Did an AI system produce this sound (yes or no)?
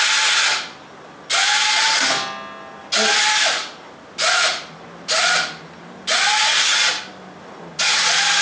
no